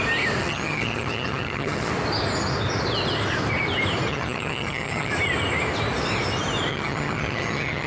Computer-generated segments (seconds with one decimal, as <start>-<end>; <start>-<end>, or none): 0.4-1.9; 4.1-5.1; 6.7-7.9